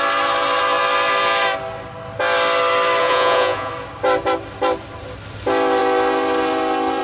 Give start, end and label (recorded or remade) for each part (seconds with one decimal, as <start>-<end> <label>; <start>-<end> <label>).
0.0-3.0 recorded; 3.0-3.7 remade; 3.7-7.0 recorded